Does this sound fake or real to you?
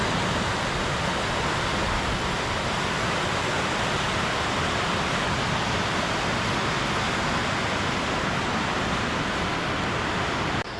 real